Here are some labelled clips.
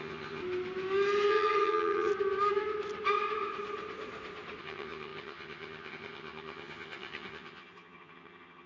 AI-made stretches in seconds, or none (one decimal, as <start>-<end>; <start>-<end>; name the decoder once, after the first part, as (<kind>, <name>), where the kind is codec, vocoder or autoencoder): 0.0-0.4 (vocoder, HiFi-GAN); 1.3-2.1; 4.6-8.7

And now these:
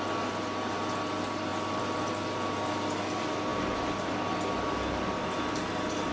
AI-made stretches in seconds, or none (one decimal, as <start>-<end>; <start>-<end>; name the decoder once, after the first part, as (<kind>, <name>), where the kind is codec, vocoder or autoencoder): none

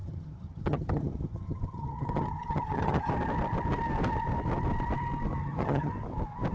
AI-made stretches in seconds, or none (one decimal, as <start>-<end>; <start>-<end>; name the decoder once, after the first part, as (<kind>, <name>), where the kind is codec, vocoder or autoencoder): 0.0-3.1 (vocoder, HiFi-GAN); 5.4-5.9